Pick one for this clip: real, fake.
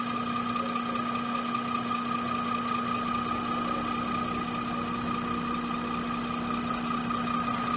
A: real